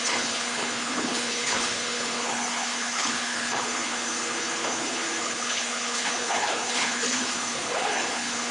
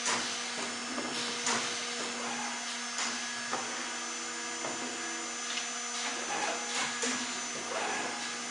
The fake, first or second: first